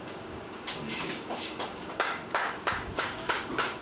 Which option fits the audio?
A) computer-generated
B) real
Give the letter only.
A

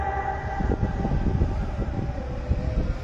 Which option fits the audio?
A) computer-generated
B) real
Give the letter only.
B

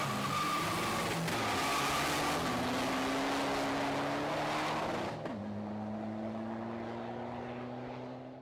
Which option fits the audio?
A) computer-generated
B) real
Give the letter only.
B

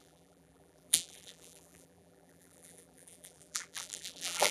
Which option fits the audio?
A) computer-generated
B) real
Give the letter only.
A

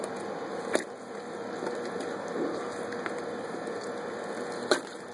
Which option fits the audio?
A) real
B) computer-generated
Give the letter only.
A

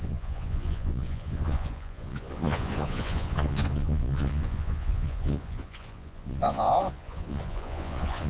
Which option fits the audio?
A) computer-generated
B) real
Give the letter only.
A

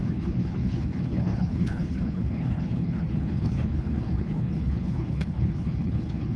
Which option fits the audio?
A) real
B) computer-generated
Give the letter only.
B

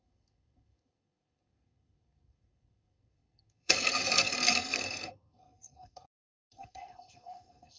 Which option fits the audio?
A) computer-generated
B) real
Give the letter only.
A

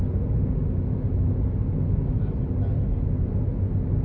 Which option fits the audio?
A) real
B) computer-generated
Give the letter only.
A